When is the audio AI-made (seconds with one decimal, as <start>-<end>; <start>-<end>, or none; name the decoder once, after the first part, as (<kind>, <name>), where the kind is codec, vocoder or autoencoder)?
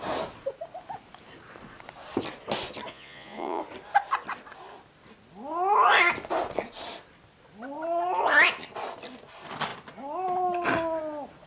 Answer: 2.9-3.6 (vocoder, Vocos)